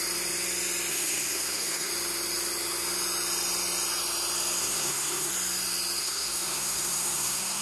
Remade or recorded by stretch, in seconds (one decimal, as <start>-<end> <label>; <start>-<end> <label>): 0.0-0.9 recorded; 0.9-1.9 remade; 1.9-4.6 recorded; 4.6-5.3 remade; 5.3-6.0 recorded; 6.0-7.6 remade